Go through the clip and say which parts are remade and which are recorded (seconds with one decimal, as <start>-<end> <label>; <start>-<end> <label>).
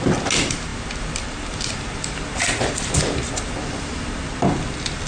0.0-5.1 recorded